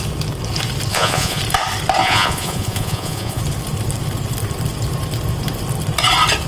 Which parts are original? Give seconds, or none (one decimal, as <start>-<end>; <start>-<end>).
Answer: 0.0-0.9; 1.4-2.0; 3.4-6.5